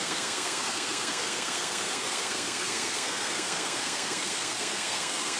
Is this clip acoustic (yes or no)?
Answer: no